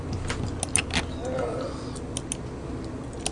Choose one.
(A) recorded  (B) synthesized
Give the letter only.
A